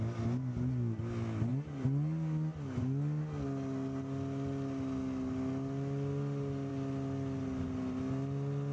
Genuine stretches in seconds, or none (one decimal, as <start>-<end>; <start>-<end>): 0.0-8.7

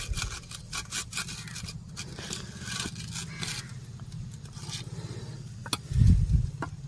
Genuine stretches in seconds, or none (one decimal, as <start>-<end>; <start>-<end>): 0.0-6.9

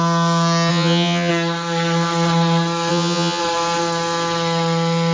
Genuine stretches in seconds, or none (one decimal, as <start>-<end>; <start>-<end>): 0.0-0.7; 1.3-2.9; 3.4-5.1

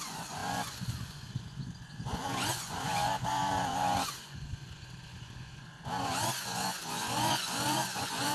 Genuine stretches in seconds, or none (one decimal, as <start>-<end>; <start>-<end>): none